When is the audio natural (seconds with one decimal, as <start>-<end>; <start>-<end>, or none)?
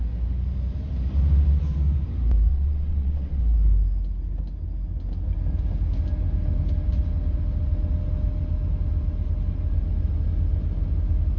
0.0-2.5; 3.4-11.4